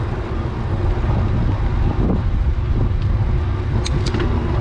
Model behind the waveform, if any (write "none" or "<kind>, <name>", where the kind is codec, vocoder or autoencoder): none